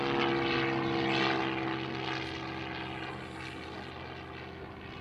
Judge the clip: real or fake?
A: real